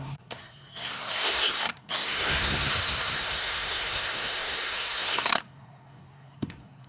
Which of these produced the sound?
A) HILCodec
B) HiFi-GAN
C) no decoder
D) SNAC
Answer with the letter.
D